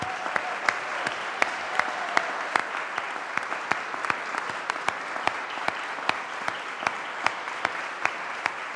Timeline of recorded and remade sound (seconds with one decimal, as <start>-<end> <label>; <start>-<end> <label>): 0.0-2.6 remade; 2.6-3.5 recorded; 3.5-8.8 remade